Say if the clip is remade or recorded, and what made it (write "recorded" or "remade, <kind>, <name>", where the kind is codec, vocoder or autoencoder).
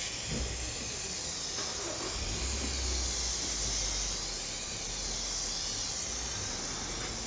recorded